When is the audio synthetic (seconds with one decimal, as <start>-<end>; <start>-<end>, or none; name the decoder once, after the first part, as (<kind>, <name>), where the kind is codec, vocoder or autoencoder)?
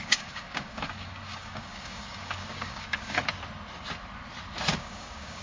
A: 0.0-3.2 (codec, DAC); 4.7-5.4